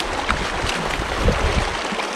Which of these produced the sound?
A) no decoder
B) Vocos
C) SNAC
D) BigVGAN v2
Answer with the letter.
A